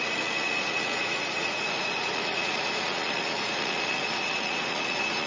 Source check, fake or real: fake